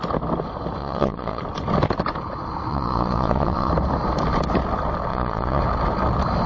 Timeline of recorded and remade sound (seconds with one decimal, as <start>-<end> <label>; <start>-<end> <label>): 0.0-0.8 recorded; 0.8-1.4 remade; 1.4-2.7 recorded; 2.7-3.7 remade; 3.7-5.1 recorded; 5.1-5.6 remade; 5.6-6.5 recorded